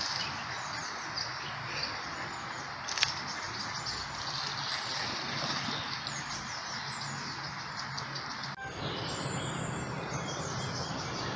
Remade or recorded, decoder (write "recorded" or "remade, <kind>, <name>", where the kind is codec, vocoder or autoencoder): recorded